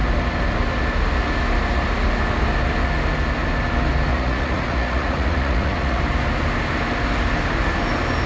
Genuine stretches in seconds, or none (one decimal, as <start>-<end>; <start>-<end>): 0.0-4.1; 6.0-8.3